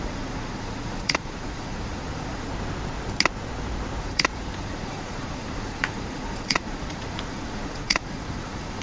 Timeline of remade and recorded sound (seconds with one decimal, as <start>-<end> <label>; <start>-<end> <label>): 0.0-2.5 remade; 2.5-4.0 recorded; 4.0-8.8 remade